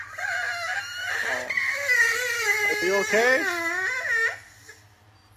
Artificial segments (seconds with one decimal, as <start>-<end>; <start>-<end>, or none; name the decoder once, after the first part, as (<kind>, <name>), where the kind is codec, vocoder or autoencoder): none